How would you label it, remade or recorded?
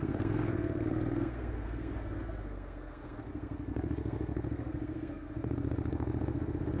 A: remade